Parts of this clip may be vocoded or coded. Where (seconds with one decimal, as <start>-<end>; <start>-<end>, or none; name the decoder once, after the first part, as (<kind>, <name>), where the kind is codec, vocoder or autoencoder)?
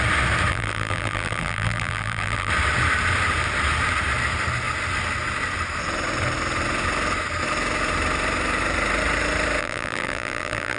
0.5-2.5 (vocoder, BigVGAN v2); 9.6-10.8